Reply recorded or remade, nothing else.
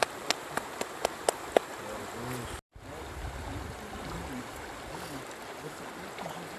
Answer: recorded